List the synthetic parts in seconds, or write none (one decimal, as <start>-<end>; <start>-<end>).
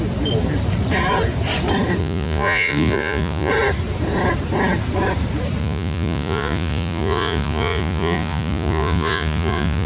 2.0-3.5; 5.6-9.9